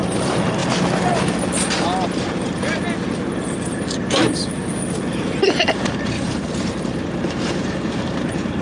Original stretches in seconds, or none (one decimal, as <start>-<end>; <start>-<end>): 0.6-5.1